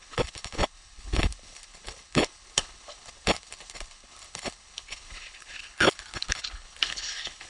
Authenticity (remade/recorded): remade